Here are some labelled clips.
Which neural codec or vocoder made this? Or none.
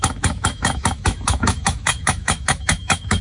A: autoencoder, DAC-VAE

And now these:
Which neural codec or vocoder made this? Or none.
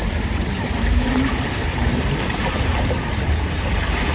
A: vocoder, BigVGAN v2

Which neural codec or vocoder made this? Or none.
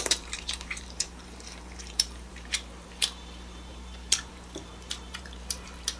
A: vocoder, BigVGAN v2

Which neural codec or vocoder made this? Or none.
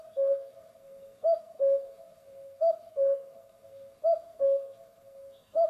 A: codec, SNAC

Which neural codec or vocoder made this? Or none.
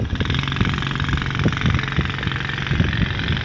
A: none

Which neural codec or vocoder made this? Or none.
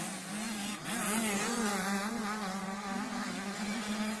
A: vocoder, Vocos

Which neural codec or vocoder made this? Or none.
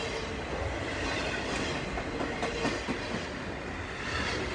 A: none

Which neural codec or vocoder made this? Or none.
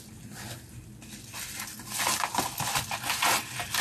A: none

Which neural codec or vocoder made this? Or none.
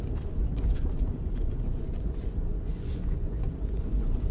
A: vocoder, Vocos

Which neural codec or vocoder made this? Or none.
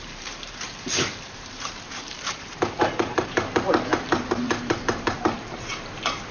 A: vocoder, BigVGAN v2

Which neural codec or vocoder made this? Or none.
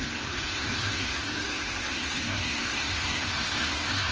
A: codec, SNAC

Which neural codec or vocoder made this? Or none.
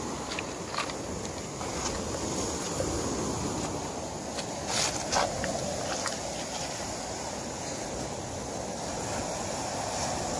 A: none